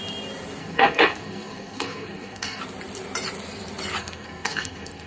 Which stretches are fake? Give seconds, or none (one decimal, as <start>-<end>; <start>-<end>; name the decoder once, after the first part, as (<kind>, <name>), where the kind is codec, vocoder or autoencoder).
0.6-2.6 (codec, SNAC); 4.0-5.1